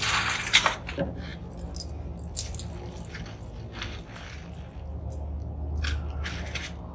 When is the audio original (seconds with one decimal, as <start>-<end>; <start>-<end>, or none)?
0.0-6.9